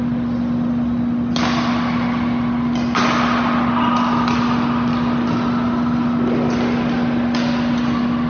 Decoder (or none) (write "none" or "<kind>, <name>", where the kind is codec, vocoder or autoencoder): none